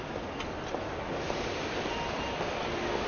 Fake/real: real